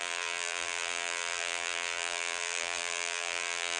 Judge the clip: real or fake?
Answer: fake